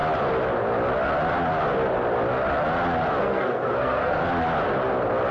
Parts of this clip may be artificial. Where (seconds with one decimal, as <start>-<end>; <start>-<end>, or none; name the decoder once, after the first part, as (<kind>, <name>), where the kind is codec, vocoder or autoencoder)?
3.2-4.2 (codec, SNAC)